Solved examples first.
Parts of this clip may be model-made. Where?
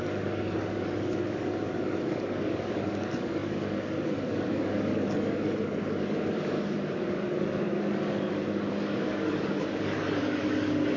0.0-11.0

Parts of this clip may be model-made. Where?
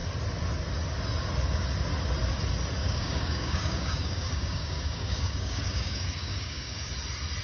2.8-6.9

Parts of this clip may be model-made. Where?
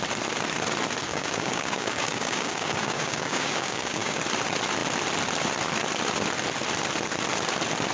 1.1-4.2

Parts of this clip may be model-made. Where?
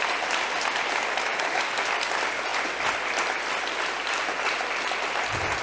1.3-1.9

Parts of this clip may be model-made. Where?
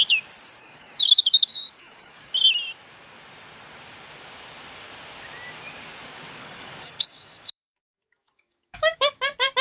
0.6-2.3; 6.4-9.2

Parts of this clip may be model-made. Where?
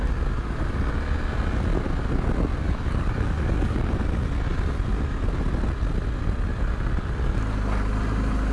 2.6-3.9